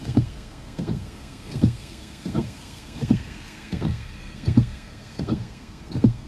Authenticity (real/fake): fake